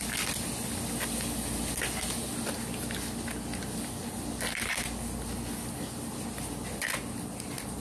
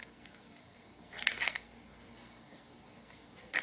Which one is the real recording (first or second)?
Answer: first